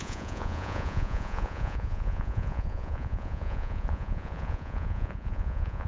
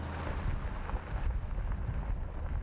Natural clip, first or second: second